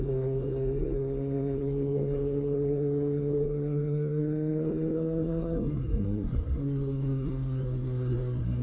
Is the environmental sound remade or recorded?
remade